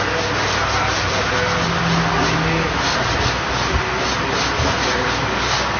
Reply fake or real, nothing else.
real